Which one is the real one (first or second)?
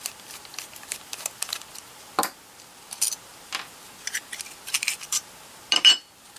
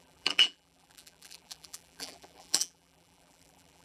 first